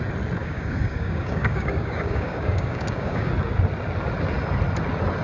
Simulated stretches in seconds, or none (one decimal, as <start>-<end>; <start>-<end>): 0.4-3.3